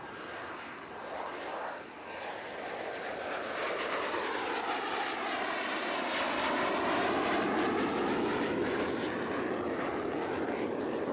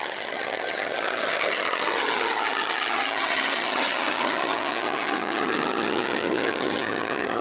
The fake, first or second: second